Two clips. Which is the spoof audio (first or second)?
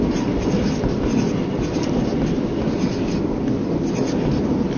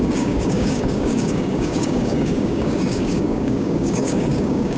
second